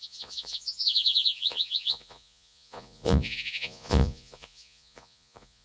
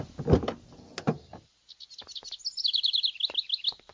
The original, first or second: second